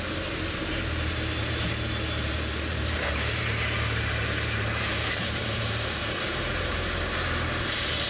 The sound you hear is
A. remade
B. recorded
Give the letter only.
A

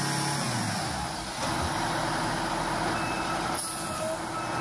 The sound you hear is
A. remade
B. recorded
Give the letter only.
B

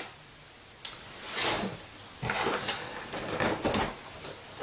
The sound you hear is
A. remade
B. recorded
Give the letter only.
B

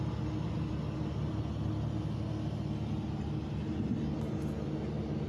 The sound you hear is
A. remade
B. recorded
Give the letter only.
B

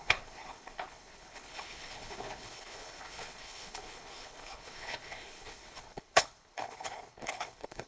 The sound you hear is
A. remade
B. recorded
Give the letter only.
A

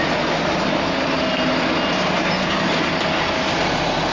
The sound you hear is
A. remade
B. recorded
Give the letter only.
B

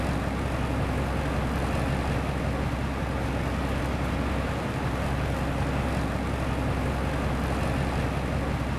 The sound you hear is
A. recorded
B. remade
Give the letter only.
A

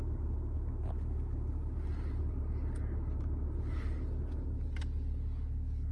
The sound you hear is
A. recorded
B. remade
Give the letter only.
A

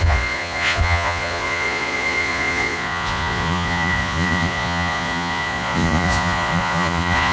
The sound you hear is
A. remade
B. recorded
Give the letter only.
A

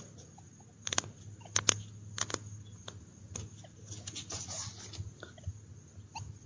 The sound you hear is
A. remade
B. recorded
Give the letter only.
B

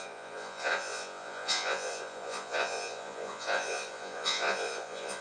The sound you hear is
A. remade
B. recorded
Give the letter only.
A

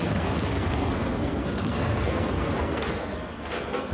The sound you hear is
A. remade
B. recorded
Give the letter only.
A